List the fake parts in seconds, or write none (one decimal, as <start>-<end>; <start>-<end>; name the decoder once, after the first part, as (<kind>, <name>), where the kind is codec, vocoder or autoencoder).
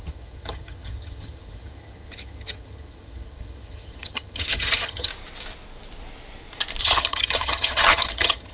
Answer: 0.0-5.1 (vocoder, HiFi-GAN); 6.8-8.5